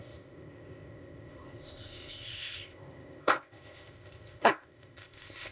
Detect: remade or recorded remade